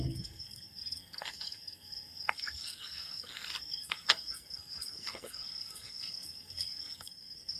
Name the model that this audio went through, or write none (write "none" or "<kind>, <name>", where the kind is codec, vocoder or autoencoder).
codec, SNAC